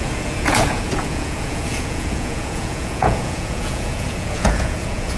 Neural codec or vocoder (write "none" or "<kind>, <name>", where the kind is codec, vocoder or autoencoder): vocoder, Vocos